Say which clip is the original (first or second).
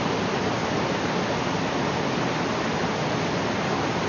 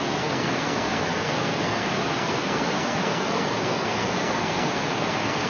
first